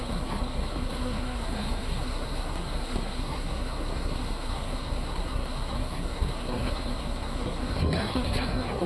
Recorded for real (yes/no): no